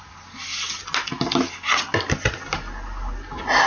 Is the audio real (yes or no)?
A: yes